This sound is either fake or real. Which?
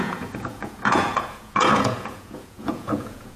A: fake